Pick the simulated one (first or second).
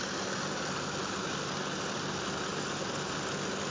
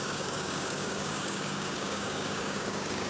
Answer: second